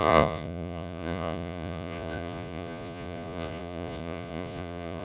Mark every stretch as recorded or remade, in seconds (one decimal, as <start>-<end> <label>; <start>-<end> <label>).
0.0-5.0 remade